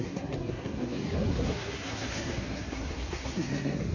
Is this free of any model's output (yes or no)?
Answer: no